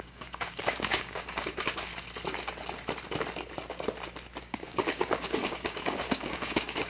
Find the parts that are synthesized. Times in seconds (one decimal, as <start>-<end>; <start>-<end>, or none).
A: 0.0-1.9; 4.4-6.9